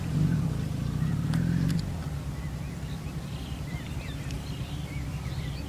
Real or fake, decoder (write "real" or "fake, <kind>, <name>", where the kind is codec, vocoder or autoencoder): real